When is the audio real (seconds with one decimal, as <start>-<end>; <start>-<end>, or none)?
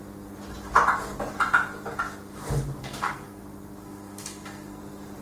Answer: 0.0-2.8; 3.4-3.8; 4.8-5.2